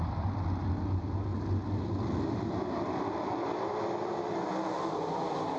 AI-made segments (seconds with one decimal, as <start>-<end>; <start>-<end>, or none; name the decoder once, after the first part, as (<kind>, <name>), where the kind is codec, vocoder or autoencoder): none